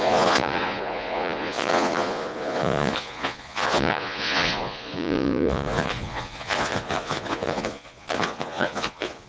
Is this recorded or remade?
remade